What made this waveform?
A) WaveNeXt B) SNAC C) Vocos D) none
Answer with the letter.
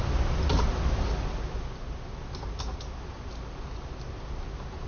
D